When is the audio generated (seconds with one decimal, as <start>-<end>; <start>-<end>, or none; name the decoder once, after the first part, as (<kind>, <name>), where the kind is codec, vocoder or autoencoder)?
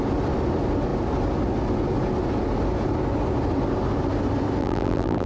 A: 4.6-5.3 (vocoder, BigVGAN v2)